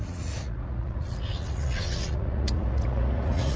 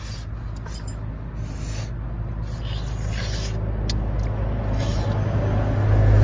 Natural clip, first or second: second